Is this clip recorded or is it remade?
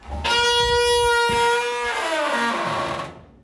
recorded